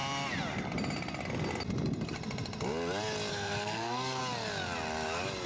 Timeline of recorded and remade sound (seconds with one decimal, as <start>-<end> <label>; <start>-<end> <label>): 0.0-3.3 recorded; 3.3-4.2 remade; 4.2-5.5 recorded